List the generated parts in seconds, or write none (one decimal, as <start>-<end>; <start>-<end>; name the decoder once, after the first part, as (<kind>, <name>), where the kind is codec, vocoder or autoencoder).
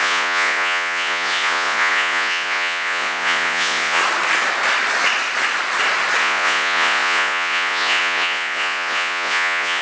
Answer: 0.0-4.0 (vocoder, Vocos); 6.2-9.8